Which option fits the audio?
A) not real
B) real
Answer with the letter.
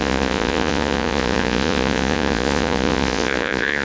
A